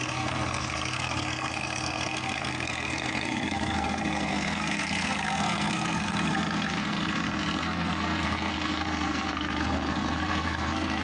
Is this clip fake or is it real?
fake